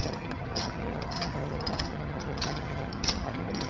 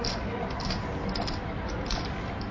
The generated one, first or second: first